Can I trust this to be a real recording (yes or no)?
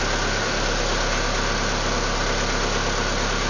yes